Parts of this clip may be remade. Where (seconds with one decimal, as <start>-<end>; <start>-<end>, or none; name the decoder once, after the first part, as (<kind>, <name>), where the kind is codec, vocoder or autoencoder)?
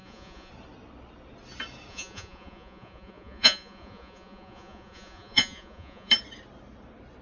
0.0-0.5 (vocoder, Vocos); 1.9-6.1